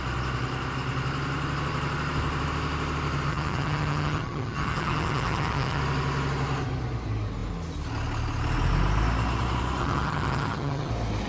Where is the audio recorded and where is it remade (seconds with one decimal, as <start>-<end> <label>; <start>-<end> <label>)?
0.0-3.3 recorded; 3.3-5.8 remade; 5.8-9.8 recorded; 9.8-10.9 remade; 10.9-11.3 recorded